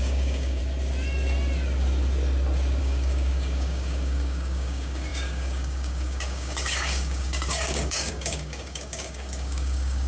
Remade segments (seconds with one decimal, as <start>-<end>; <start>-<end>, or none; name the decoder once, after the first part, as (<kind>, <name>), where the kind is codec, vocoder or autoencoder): 0.0-0.6 (codec, DAC); 2.8-10.1